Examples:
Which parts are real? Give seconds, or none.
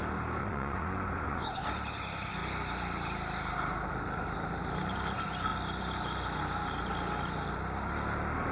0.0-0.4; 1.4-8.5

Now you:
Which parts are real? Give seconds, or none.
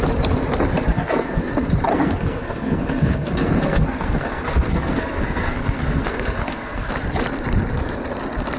0.0-0.9; 1.4-1.9; 6.9-8.6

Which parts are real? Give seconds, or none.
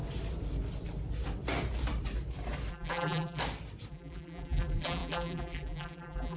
0.0-2.7; 3.4-3.9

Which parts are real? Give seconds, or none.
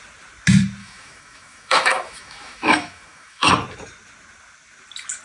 0.0-0.8; 3.5-5.2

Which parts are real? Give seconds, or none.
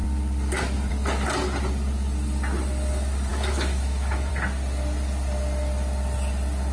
0.0-3.3; 4.3-6.7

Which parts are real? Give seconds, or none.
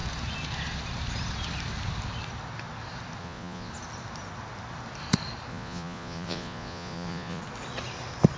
0.0-3.2; 3.7-5.5; 7.4-8.4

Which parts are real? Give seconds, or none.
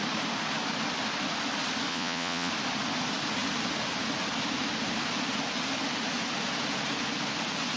0.0-1.9; 2.5-7.8